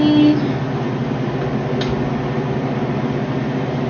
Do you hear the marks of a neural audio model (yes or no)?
no